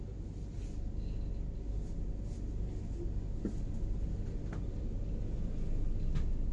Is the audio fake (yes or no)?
no